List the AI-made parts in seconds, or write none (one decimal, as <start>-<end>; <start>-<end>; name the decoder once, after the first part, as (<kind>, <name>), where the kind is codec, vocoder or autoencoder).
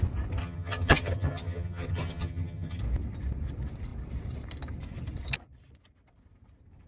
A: 0.4-2.8 (vocoder, HiFi-GAN)